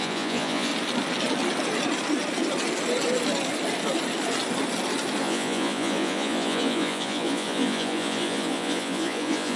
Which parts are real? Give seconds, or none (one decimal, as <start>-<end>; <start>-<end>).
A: 0.7-5.2

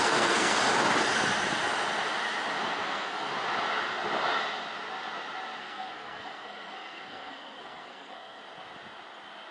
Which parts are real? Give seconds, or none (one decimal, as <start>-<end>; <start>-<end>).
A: 0.6-2.7; 3.3-5.6; 8.4-9.5

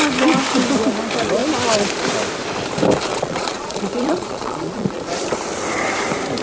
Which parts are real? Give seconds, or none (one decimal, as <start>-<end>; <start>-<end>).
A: 0.0-3.1; 5.0-6.4

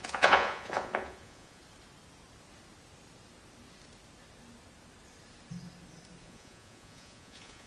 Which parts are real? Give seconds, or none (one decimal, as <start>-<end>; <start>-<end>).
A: 1.6-6.2

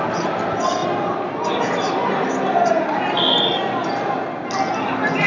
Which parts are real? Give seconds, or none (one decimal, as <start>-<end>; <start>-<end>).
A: 0.0-5.3

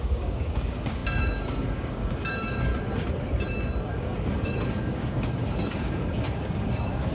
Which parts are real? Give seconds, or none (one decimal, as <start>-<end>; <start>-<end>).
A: 2.7-3.9